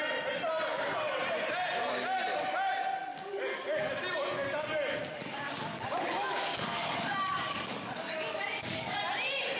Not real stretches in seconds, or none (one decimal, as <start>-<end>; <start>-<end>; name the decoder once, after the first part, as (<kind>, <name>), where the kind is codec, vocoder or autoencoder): 3.1-3.9 (codec, DAC); 5.2-9.0